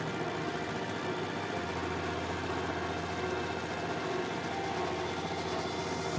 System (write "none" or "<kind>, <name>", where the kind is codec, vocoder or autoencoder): none